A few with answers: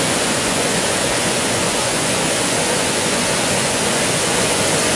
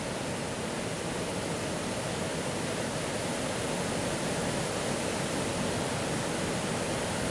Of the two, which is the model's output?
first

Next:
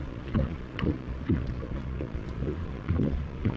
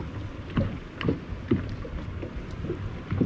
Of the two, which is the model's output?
first